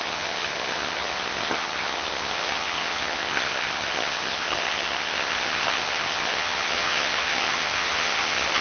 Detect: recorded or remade remade